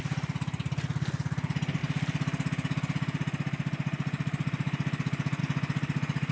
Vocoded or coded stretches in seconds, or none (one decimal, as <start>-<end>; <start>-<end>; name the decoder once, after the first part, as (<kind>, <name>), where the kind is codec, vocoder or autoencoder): none